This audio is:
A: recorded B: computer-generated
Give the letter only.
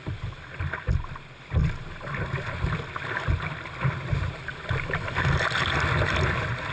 A